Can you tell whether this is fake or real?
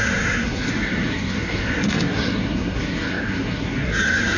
fake